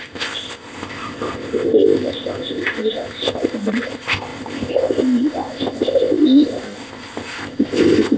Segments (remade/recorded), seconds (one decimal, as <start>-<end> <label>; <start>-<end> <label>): 0.0-8.2 remade